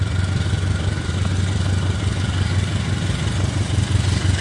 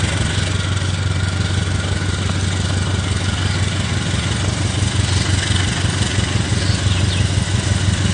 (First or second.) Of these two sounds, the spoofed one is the first